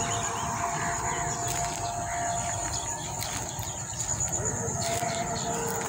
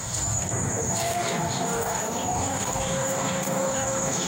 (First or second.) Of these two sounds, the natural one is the first